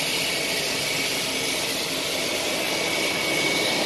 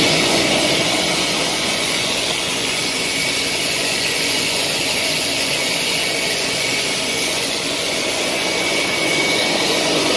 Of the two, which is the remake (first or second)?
second